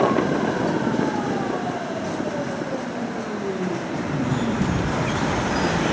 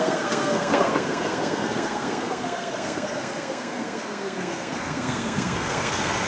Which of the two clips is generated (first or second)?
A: second